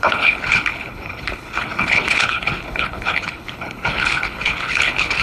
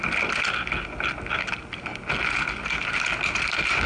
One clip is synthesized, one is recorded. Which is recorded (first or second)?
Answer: second